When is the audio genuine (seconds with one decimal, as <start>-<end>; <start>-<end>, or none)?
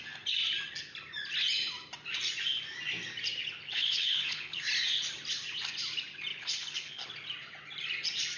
0.0-3.6; 4.6-6.3; 7.1-8.4